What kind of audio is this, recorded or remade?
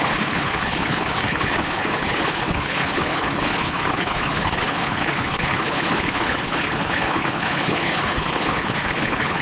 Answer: remade